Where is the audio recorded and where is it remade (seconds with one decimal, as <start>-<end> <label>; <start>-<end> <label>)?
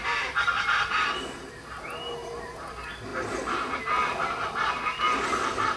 0.0-5.8 recorded